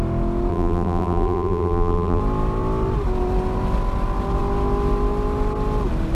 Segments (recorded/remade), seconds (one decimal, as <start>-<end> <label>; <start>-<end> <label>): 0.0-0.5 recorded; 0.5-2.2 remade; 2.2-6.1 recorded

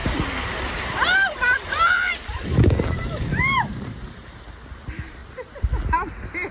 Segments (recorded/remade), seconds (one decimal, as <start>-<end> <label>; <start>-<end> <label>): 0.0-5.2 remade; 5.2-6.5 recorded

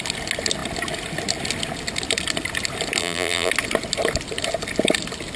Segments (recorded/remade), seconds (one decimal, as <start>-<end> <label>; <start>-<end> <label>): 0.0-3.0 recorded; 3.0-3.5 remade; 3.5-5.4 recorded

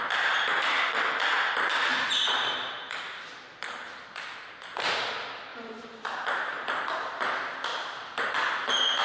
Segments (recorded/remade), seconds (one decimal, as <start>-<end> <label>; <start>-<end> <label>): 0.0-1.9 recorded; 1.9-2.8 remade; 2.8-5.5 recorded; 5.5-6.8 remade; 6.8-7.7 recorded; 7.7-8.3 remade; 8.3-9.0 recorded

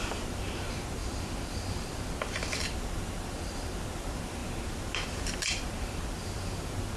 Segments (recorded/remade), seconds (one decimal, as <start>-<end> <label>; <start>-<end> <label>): 0.0-7.0 remade

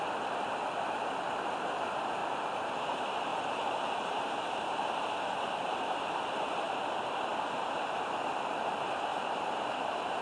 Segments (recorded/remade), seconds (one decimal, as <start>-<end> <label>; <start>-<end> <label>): 0.0-2.2 recorded; 2.2-2.8 remade; 2.8-3.3 recorded; 3.3-4.9 remade; 4.9-9.1 recorded; 9.1-10.2 remade

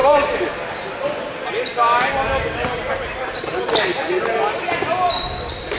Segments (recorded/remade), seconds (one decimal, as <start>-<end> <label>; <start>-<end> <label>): 0.0-1.7 recorded; 1.7-3.2 remade; 3.2-5.8 recorded

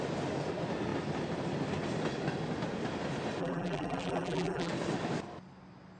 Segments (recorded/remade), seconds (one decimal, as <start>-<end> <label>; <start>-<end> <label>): 0.0-3.4 recorded; 3.4-4.7 remade; 4.7-6.0 recorded